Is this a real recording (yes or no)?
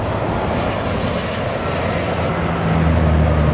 yes